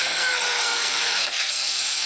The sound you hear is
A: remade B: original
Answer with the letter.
A